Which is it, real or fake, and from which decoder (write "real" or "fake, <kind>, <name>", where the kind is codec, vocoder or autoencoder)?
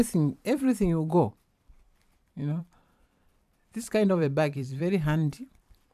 fake, vocoder, BigVGAN v2